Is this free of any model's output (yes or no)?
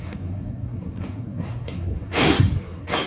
no